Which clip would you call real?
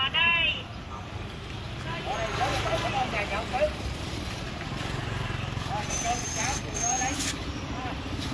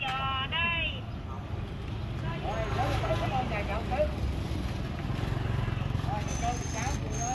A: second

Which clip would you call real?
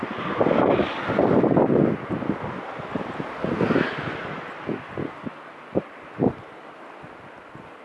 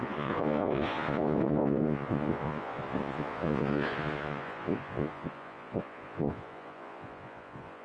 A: first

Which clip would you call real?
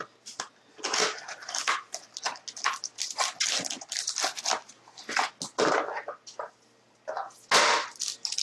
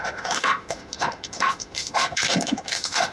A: first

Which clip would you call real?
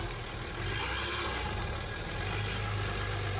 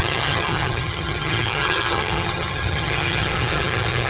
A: first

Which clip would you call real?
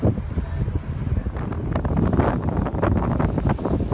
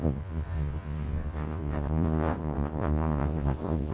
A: first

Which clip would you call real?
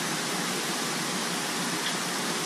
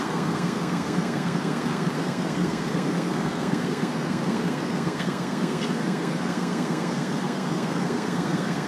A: first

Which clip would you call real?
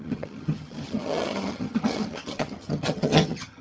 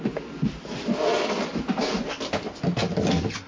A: second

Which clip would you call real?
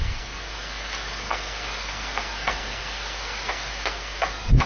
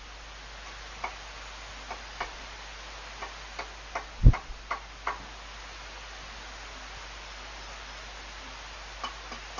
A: second